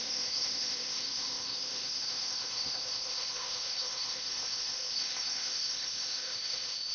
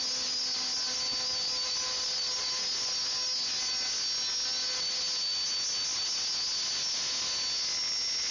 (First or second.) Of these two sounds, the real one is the second